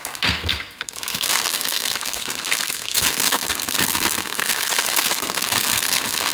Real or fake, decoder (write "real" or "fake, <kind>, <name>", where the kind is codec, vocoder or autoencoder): fake, codec, SNAC